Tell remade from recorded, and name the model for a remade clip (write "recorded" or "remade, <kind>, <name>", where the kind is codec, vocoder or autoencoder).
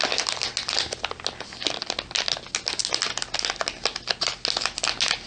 recorded